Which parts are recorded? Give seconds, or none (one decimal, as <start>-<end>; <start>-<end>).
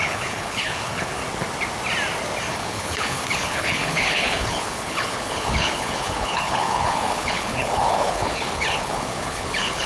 1.2-2.5